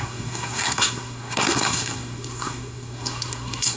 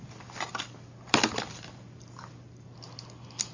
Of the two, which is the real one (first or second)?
second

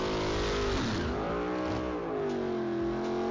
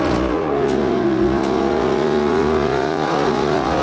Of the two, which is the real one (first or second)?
first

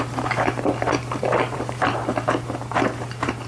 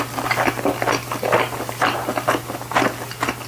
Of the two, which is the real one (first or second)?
second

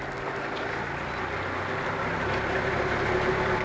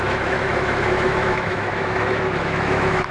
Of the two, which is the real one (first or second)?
first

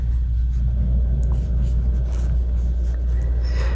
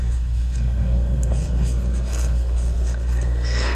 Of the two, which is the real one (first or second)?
first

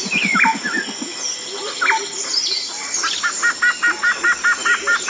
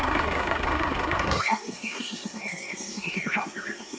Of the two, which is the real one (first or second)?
first